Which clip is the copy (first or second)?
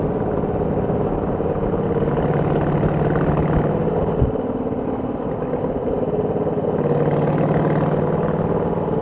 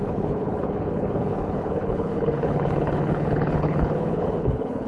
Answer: second